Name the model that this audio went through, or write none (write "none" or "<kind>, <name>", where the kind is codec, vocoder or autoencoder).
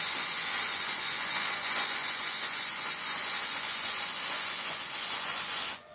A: vocoder, Vocos